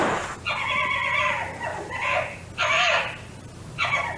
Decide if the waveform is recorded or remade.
recorded